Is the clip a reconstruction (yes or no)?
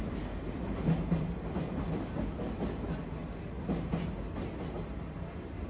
no